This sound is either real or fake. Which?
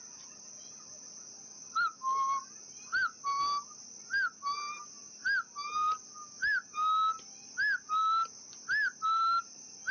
real